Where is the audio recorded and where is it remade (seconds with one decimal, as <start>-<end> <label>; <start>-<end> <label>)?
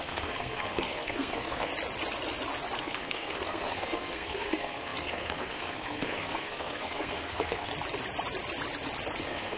0.0-1.7 remade; 1.7-2.8 recorded; 2.8-7.7 remade; 7.7-9.2 recorded; 9.2-9.6 remade